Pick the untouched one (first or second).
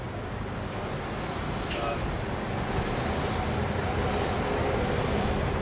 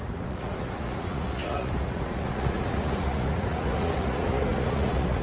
first